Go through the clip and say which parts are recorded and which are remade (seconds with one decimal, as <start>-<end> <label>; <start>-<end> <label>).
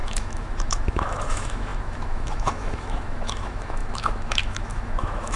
0.0-5.4 remade